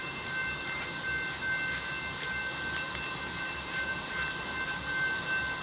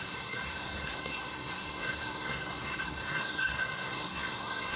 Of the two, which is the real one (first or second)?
first